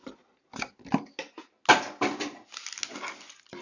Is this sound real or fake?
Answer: real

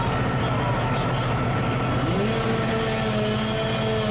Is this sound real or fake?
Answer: real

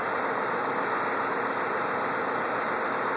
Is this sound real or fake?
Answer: real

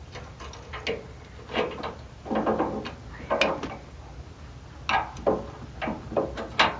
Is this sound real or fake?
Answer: real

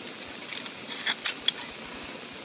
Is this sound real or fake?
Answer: real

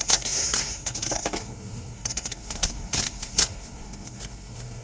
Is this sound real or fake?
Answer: fake